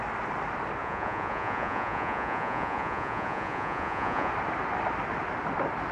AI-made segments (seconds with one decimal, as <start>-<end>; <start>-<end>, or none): 0.8-4.3